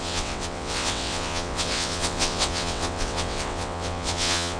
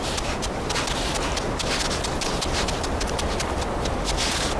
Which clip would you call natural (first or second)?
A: second